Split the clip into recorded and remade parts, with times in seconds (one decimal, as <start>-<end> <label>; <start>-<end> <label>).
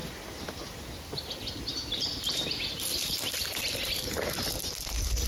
0.0-5.3 recorded